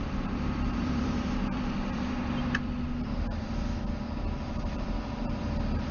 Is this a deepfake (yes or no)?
yes